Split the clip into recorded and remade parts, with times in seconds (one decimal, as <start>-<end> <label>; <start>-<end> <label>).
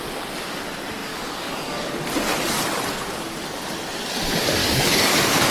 0.0-1.0 recorded; 1.0-1.9 remade; 1.9-4.6 recorded; 4.6-5.5 remade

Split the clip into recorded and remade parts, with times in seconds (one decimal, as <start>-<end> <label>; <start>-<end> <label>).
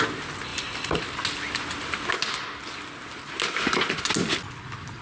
0.0-5.0 recorded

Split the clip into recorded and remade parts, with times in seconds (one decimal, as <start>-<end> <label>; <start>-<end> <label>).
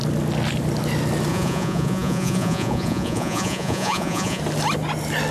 0.0-1.3 recorded; 1.3-4.4 remade; 4.4-5.3 recorded